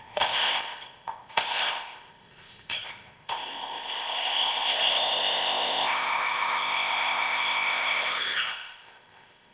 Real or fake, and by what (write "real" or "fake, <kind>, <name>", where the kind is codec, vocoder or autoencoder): fake, codec, ZipCodec